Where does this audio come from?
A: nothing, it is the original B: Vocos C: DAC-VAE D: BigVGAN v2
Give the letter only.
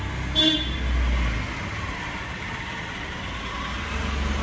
A